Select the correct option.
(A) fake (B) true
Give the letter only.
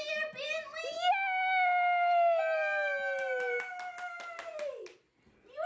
B